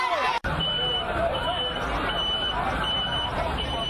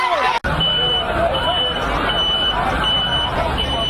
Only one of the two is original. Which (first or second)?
second